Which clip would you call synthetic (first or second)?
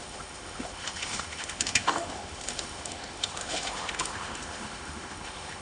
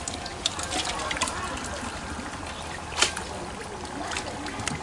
first